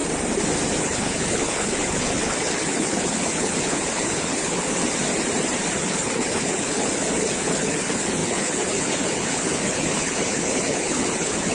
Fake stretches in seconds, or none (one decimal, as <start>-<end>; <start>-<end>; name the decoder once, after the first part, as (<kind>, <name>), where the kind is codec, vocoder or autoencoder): 0.8-4.8 (codec, HILCodec); 5.8-11.5